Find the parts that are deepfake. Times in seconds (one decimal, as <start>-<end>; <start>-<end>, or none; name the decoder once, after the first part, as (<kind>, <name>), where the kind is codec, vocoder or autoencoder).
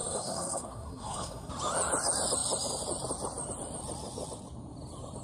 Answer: 0.0-1.5 (codec, SNAC)